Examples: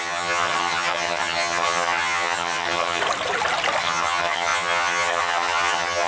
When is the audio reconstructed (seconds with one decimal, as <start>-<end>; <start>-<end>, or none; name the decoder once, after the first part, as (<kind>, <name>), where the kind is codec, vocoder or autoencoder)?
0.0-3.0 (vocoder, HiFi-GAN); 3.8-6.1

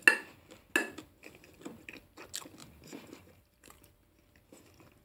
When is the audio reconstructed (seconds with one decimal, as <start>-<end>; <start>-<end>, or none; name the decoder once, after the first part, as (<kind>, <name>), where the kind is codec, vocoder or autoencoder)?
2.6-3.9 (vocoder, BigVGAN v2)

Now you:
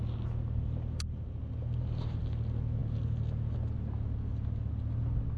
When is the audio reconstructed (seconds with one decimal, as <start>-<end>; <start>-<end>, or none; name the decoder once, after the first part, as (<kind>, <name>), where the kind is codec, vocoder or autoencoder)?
none